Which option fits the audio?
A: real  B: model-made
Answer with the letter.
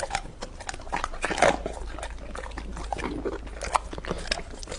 A